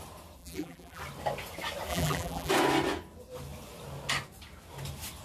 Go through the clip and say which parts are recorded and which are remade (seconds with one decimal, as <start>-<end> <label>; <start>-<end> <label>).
0.0-0.4 recorded; 0.4-1.0 remade; 1.0-1.9 recorded; 1.9-2.5 remade; 2.5-5.2 recorded